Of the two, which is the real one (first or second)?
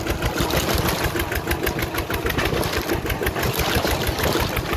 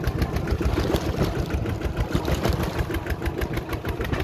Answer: first